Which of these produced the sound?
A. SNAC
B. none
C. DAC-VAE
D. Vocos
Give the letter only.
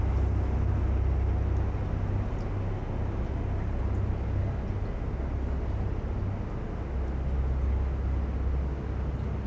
B